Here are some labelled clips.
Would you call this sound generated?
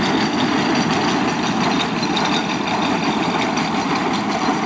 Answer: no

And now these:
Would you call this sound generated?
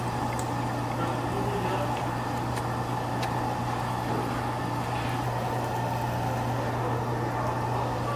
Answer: no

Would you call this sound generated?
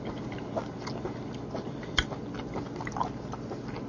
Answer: no